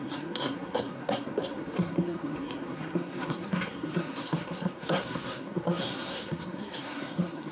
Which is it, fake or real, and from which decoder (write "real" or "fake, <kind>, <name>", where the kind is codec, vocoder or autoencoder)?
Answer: fake, codec, SNAC